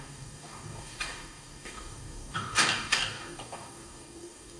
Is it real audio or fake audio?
fake